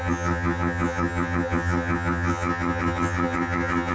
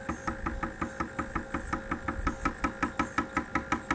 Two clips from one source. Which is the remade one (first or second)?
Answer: first